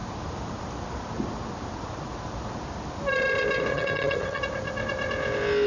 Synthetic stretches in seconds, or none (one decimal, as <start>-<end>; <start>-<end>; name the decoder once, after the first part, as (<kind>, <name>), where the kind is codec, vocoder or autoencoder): 3.7-4.4 (vocoder, HiFi-GAN)